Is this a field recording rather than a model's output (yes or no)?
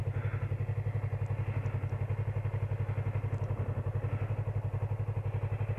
yes